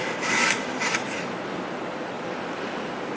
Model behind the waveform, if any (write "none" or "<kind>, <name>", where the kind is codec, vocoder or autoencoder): none